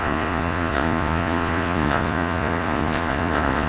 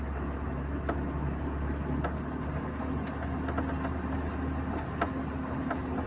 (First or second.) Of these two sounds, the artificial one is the first